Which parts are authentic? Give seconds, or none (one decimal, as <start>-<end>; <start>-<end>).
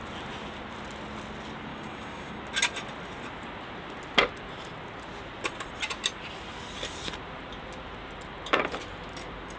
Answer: 0.0-1.7; 2.4-9.6